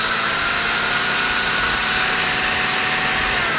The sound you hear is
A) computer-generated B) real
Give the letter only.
B